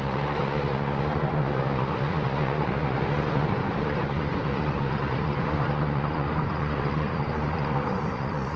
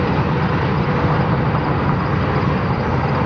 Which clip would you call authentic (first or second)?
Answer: second